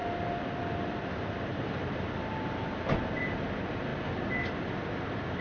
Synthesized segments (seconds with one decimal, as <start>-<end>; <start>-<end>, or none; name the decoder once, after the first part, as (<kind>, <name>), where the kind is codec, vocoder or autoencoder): 0.0-3.2 (vocoder, BigVGAN v2)